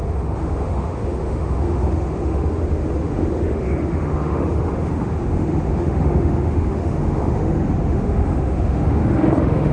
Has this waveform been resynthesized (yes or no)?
yes